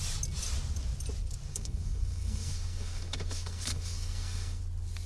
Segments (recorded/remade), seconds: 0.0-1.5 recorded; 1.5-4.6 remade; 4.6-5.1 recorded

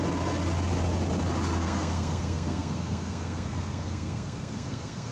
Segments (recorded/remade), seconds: 0.0-1.6 recorded; 1.6-5.1 remade

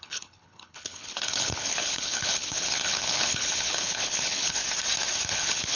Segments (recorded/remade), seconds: 0.0-4.6 remade; 4.6-5.3 recorded; 5.3-5.8 remade

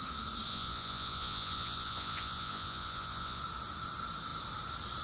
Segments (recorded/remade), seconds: 0.0-0.5 recorded; 0.5-3.4 remade; 3.4-5.0 recorded